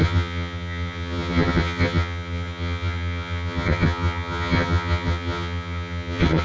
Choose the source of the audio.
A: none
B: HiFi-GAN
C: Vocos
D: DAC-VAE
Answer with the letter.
B